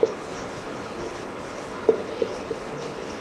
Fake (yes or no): yes